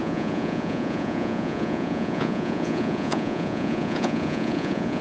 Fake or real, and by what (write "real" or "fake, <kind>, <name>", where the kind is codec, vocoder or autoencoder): fake, vocoder, Vocos